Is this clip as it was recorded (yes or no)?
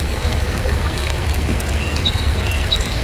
no